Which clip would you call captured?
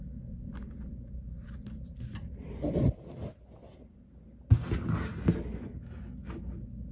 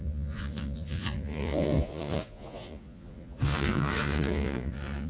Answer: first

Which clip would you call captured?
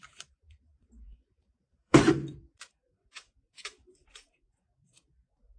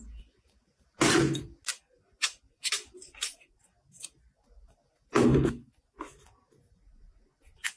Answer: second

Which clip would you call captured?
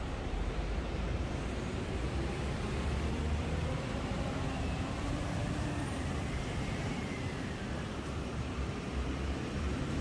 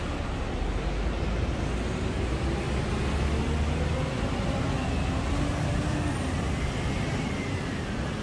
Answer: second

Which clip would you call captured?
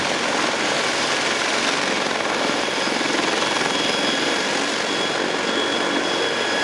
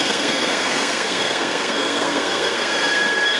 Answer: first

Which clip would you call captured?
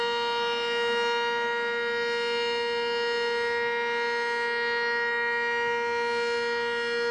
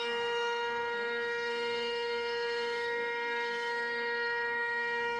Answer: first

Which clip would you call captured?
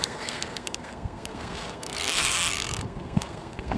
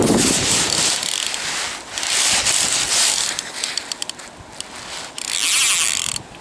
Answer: second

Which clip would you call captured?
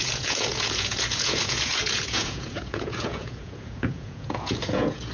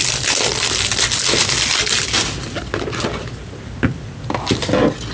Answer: second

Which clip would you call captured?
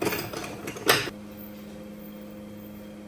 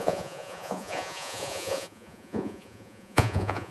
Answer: first